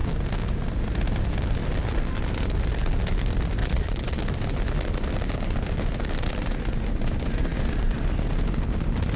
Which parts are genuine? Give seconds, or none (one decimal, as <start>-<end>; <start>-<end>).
0.0-3.6; 4.2-9.2